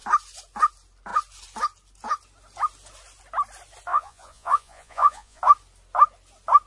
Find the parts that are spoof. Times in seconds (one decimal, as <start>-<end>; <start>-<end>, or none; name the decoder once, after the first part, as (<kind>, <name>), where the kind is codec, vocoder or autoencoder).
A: 3.9-5.4 (vocoder, Vocos)